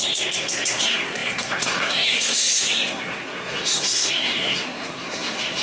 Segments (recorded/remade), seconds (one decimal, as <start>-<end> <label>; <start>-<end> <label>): 0.0-5.6 remade